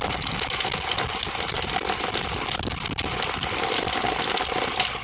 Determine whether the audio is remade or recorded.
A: recorded